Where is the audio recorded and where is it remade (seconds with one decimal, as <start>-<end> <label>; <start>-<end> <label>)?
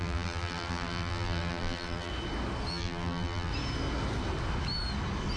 0.0-2.1 remade; 2.1-2.7 recorded; 2.7-3.5 remade; 3.5-5.4 recorded